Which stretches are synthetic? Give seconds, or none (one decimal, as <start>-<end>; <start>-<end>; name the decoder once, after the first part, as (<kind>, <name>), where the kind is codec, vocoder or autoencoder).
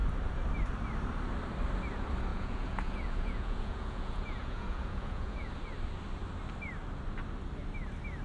2.3-5.5 (vocoder, Vocos)